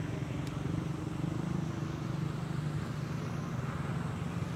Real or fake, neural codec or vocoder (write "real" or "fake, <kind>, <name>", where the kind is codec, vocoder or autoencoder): real